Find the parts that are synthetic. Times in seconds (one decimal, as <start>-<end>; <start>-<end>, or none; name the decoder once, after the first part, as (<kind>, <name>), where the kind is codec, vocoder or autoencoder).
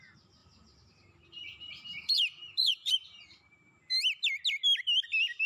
0.4-3.7 (vocoder, BigVGAN v2)